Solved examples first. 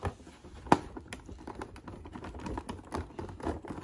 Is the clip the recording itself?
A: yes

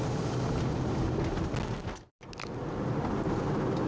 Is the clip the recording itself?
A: yes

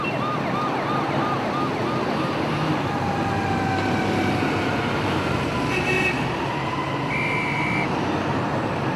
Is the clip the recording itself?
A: yes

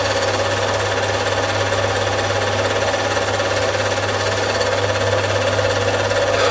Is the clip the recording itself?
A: yes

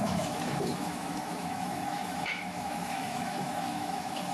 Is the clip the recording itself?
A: no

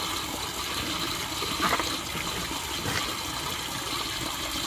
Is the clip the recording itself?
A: yes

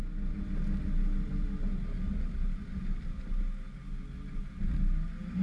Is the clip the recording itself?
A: yes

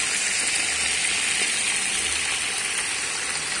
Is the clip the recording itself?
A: yes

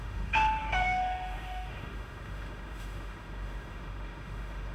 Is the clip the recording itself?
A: no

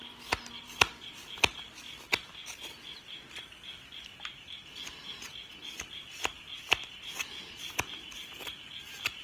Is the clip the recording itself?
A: yes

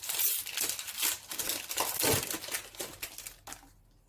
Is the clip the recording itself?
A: yes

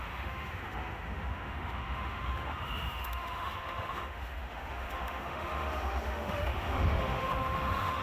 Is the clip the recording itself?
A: no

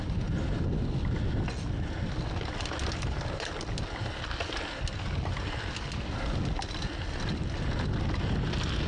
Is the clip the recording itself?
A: yes